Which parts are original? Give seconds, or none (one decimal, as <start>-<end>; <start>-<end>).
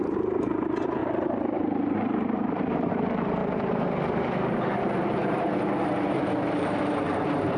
none